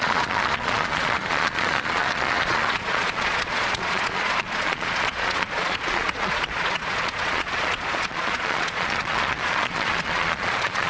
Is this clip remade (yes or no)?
yes